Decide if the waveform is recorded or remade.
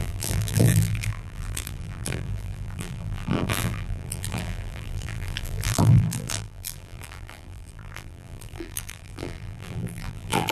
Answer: remade